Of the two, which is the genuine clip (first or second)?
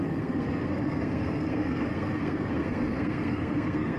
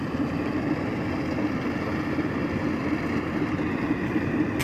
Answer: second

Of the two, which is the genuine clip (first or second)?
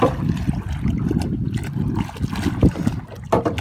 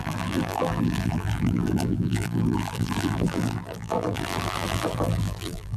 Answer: first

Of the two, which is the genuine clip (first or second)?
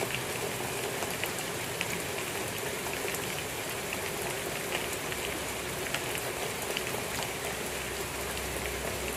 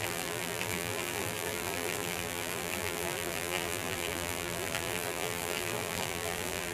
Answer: first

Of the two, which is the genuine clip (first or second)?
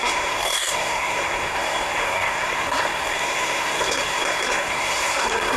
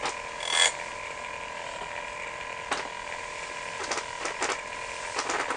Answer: second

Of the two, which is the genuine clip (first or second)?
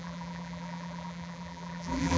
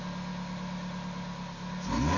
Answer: second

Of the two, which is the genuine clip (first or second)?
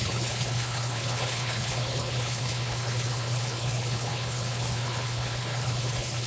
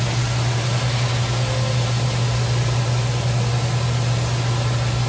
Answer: second